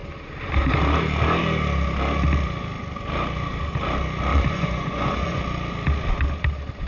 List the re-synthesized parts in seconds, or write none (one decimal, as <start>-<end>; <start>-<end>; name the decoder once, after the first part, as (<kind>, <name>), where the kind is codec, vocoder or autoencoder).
4.3-5.4 (vocoder, Vocos)